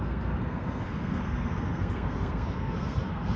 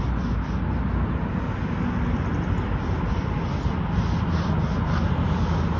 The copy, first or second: first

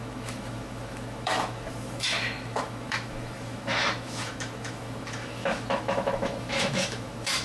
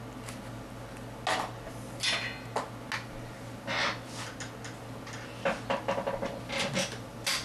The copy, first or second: first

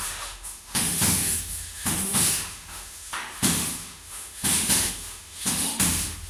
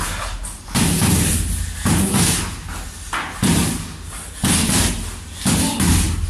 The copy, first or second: first